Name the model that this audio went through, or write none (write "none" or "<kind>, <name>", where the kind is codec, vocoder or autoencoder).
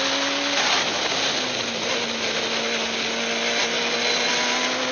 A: none